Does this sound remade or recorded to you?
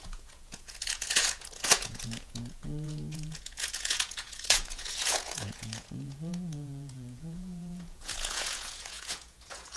remade